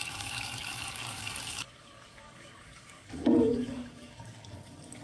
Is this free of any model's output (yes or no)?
no